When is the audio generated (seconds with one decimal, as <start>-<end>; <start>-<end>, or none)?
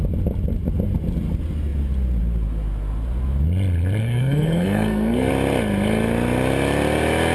4.0-5.3